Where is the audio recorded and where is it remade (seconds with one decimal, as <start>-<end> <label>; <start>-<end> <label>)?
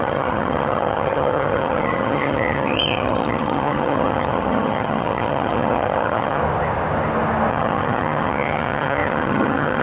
0.0-6.4 remade; 6.4-7.5 recorded; 7.5-9.8 remade